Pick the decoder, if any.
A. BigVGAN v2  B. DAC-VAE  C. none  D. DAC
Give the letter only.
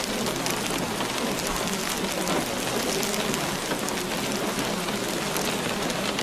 C